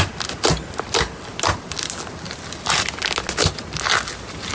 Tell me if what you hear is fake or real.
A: real